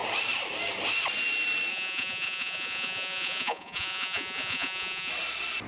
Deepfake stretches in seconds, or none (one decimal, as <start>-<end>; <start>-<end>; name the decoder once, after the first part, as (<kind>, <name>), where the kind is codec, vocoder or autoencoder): 1.7-5.1 (vocoder, Vocos)